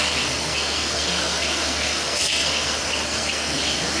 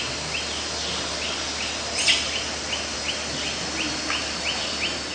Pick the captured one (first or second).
second